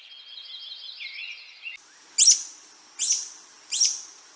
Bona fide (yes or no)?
yes